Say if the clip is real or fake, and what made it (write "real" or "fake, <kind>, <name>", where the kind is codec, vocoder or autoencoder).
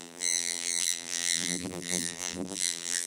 fake, vocoder, BigVGAN v2